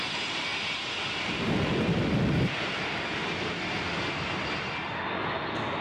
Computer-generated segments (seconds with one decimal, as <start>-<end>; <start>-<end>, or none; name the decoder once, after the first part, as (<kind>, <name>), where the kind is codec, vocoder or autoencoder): 0.5-2.8 (vocoder, BigVGAN v2)